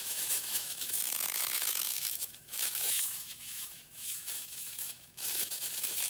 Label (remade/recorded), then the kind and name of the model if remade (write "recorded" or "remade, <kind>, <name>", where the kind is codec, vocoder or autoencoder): remade, autoencoder, DAC-VAE